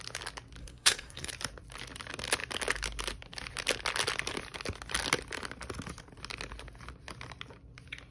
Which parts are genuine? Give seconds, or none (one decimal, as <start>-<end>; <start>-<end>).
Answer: 0.0-0.6; 1.3-8.1